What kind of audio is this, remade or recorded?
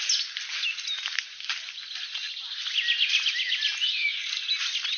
recorded